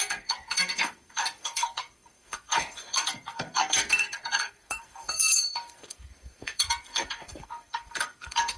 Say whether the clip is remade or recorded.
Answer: remade